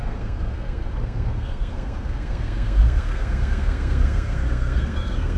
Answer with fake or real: fake